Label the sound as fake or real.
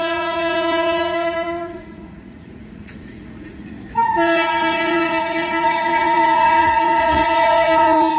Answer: fake